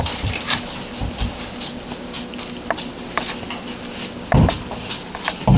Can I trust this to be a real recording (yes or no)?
yes